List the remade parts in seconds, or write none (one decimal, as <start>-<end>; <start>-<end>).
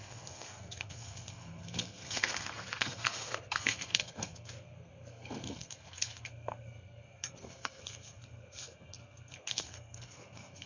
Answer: 0.0-10.7